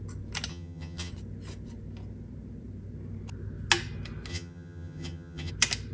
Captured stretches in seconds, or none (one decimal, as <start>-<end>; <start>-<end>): 0.0-0.5; 1.1-4.3; 5.5-5.9